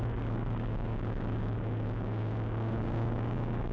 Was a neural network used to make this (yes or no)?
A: yes